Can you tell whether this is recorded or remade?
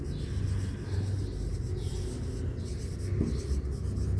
recorded